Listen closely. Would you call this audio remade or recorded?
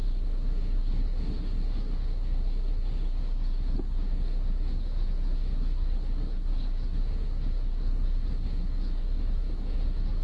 remade